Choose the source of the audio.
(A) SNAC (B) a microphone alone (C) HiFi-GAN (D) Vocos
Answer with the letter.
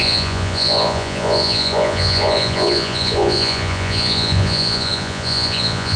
D